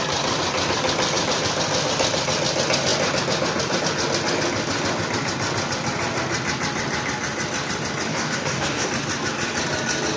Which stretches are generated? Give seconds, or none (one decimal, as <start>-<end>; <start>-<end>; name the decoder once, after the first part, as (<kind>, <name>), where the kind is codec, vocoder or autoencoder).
8.1-8.9 (codec, DAC)